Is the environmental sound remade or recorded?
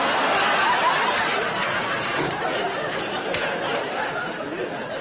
recorded